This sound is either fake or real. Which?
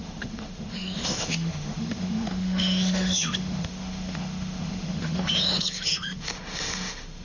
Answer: fake